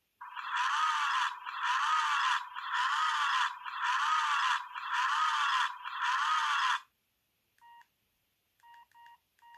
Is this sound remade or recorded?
recorded